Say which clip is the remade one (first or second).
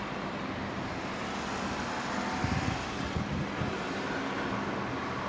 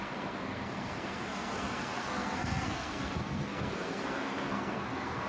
second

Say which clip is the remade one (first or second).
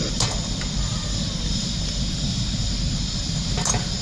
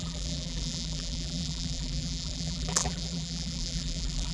second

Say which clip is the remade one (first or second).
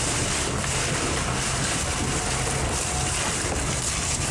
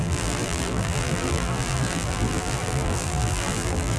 second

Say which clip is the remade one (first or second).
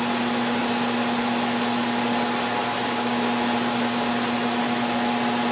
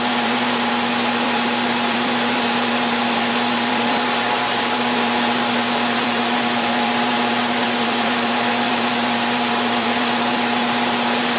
second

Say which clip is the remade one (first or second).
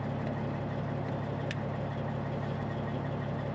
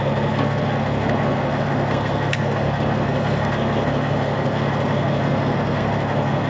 second